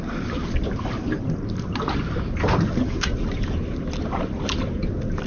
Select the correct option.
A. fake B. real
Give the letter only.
B